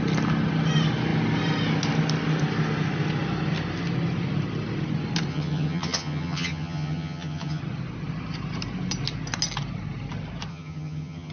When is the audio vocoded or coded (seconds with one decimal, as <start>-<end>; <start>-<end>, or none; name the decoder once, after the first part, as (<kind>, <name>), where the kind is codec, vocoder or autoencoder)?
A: 5.3-7.6 (vocoder, HiFi-GAN); 10.5-11.3